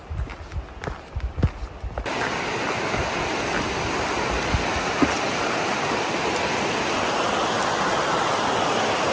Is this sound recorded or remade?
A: recorded